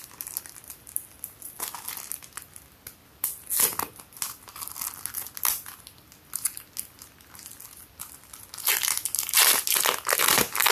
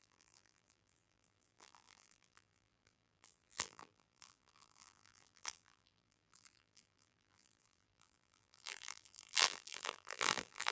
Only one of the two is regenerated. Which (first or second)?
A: second